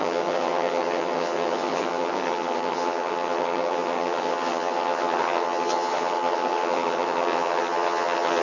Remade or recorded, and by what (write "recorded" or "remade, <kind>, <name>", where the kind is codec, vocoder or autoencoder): remade, vocoder, HiFi-GAN